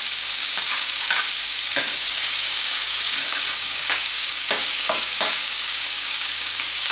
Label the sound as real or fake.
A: fake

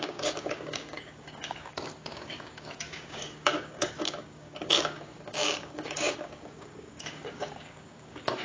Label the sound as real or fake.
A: fake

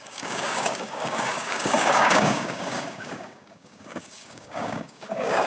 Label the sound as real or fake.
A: fake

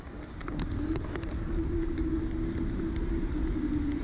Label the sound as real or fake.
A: real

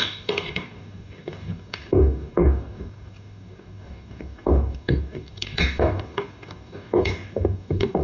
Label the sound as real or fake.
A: fake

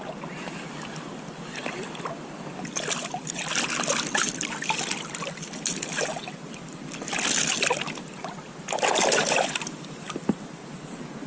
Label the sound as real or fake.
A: real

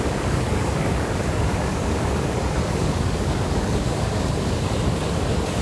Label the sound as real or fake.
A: fake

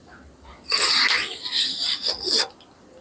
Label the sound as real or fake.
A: real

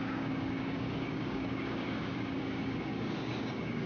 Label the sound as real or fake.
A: fake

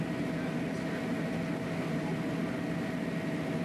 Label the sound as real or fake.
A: real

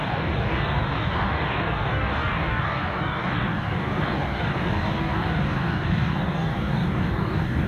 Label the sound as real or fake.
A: fake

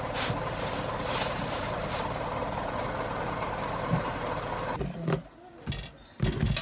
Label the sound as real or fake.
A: real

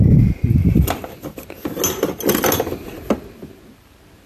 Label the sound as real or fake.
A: real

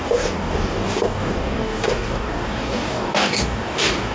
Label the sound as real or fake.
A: fake